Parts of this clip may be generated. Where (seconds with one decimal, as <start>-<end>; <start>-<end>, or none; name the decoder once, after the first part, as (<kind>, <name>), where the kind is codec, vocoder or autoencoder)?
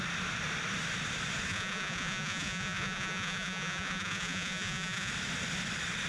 1.5-5.1 (vocoder, Vocos)